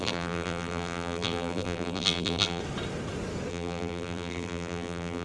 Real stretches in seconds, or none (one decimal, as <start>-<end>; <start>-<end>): 2.6-3.5